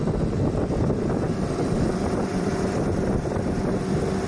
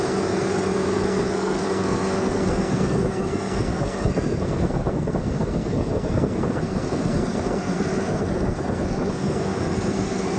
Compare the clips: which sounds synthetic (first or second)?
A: second